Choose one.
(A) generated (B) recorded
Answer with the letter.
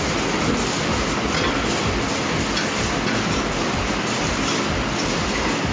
B